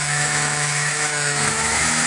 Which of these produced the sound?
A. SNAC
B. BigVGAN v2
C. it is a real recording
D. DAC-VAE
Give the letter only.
D